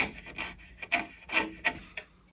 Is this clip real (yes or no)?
yes